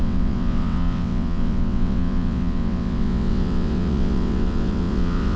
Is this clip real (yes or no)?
no